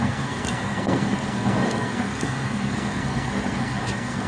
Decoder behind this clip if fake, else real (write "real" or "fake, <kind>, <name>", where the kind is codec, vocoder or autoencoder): fake, codec, SNAC